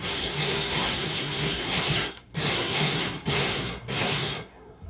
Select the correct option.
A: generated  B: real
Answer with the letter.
A